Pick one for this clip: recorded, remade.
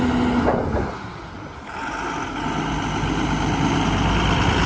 recorded